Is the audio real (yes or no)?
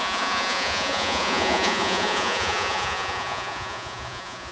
no